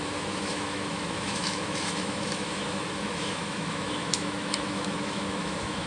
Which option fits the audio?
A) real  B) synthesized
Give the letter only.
B